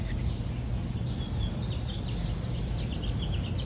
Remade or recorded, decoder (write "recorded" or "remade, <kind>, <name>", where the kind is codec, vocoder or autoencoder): recorded